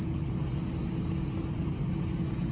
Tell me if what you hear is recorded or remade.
recorded